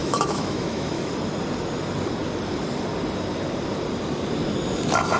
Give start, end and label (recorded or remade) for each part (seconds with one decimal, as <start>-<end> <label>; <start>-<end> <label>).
0.0-1.1 remade; 1.1-5.2 recorded

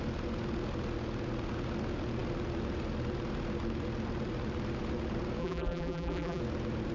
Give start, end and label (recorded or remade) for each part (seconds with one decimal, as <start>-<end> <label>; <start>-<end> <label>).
0.0-5.4 recorded; 5.4-6.4 remade; 6.4-6.9 recorded

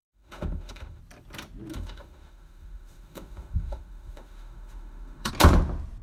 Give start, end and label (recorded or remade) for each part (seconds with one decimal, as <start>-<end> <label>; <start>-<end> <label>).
0.0-1.0 remade; 1.0-1.7 recorded; 1.7-5.3 remade; 5.3-6.0 recorded

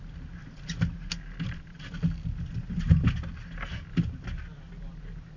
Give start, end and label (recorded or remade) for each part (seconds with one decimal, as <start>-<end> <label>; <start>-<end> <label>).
0.0-5.4 recorded

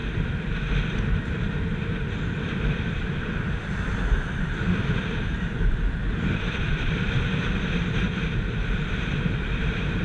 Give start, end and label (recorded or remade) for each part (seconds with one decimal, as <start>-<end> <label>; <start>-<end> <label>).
0.0-2.9 recorded; 2.9-8.2 remade; 8.2-8.9 recorded; 8.9-10.0 remade

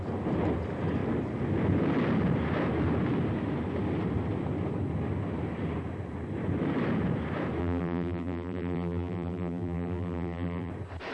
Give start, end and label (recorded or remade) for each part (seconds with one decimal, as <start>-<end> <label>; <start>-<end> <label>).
0.0-7.6 recorded; 7.6-10.7 remade; 10.7-11.1 recorded

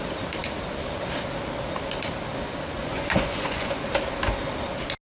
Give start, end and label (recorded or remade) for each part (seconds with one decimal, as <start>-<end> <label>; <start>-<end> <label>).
0.0-2.8 recorded; 2.8-3.8 remade; 3.8-5.1 recorded